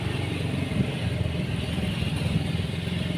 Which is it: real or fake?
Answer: real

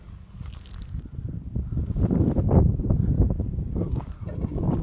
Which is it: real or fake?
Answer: fake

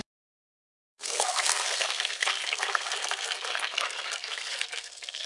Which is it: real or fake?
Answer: fake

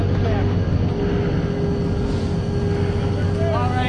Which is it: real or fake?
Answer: real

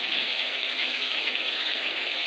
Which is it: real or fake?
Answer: fake